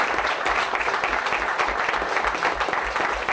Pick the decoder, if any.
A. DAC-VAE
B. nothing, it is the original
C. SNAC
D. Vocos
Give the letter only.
B